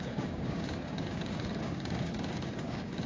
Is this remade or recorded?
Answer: remade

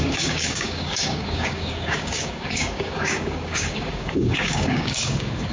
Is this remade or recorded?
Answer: remade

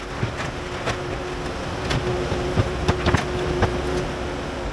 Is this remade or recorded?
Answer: recorded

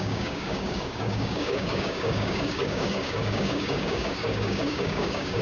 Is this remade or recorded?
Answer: remade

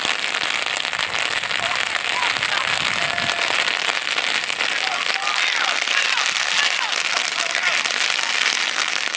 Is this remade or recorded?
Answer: recorded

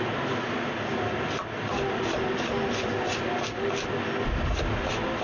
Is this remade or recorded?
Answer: recorded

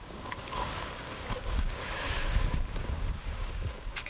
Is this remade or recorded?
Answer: remade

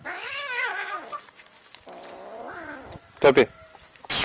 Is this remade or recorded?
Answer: recorded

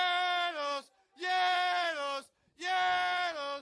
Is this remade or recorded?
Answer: recorded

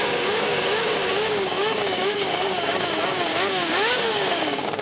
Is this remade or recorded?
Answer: remade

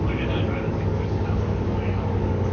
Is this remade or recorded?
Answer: remade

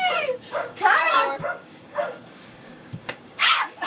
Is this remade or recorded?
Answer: remade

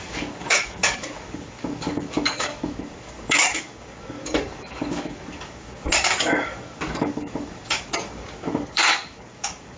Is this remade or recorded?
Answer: remade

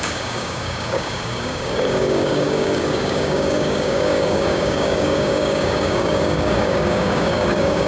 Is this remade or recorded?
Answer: remade